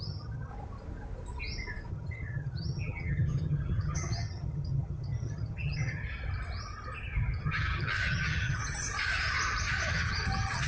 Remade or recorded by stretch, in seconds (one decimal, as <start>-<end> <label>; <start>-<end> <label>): 0.0-0.5 remade; 0.5-1.9 recorded; 1.9-6.0 remade; 6.0-7.4 recorded; 7.4-8.6 remade; 8.6-9.9 recorded; 9.9-10.7 remade